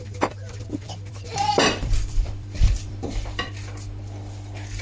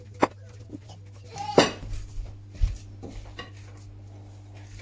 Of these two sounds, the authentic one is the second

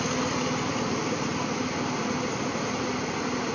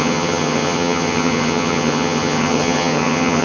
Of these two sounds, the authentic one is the first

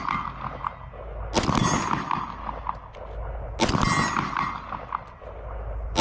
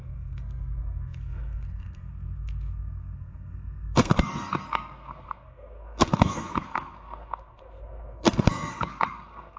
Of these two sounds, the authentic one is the first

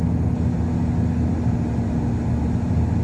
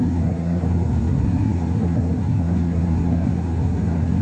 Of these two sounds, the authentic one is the first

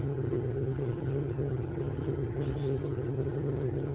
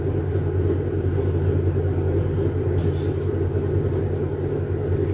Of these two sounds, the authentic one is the second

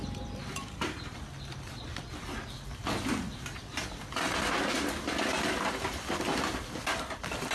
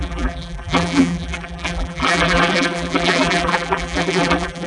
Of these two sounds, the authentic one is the first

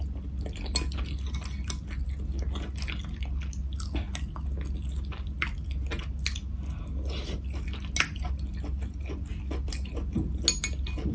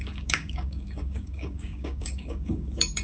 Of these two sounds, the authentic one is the first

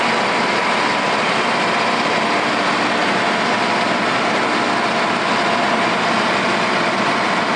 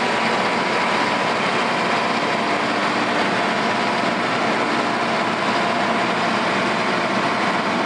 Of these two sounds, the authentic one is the second